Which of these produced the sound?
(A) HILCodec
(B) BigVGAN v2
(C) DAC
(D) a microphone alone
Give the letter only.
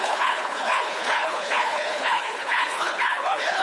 A